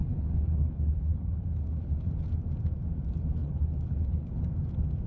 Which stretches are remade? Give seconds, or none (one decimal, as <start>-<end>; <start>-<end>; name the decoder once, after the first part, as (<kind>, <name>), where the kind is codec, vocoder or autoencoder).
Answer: 0.0-2.1 (codec, HILCodec); 3.4-4.4